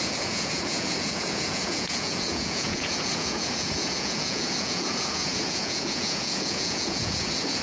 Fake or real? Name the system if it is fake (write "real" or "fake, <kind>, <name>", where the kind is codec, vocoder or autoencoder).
fake, vocoder, Vocos